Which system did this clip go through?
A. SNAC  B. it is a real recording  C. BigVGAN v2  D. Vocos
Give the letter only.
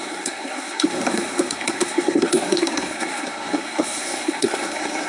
A